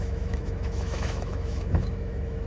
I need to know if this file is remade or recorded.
remade